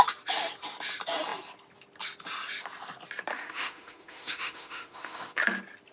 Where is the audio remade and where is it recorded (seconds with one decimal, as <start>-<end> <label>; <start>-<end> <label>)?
0.0-3.3 recorded; 3.3-5.4 remade; 5.4-5.9 recorded